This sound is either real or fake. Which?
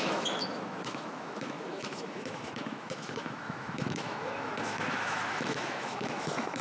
fake